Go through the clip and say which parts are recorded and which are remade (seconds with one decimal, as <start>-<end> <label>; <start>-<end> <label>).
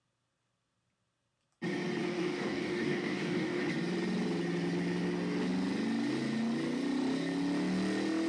0.0-2.1 recorded; 2.1-3.6 remade; 3.6-8.3 recorded